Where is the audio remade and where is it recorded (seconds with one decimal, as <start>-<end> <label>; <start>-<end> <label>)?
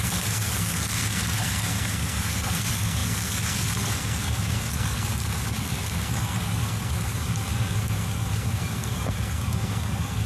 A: 0.0-10.3 remade